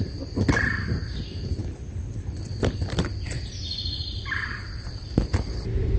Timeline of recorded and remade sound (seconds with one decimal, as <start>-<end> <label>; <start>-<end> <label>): 0.0-1.6 recorded; 1.6-5.0 remade; 5.0-6.0 recorded

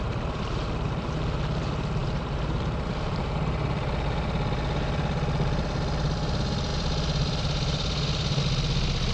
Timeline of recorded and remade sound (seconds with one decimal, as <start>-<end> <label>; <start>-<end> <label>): 0.0-2.0 recorded; 2.0-3.4 remade; 3.4-6.7 recorded; 6.7-8.4 remade; 8.4-9.1 recorded

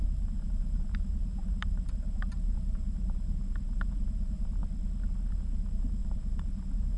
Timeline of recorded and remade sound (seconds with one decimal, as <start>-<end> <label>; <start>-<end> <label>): 0.0-4.6 remade; 4.6-5.3 recorded; 5.3-7.0 remade

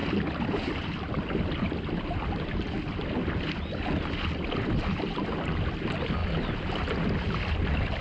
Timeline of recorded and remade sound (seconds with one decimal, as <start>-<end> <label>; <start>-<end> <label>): 0.0-3.6 remade; 3.6-6.2 recorded; 6.2-6.7 remade; 6.7-8.0 recorded